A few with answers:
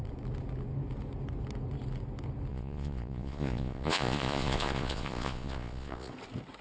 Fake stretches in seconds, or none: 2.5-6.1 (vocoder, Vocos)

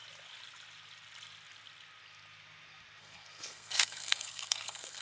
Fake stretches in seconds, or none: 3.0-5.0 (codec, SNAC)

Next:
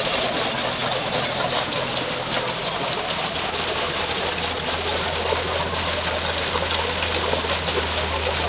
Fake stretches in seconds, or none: none